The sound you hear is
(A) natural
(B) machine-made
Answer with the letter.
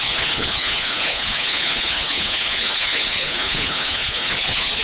B